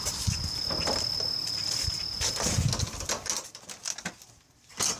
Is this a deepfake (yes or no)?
no